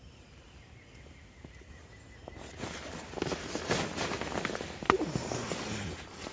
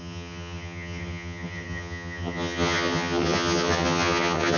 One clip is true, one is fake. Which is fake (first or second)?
second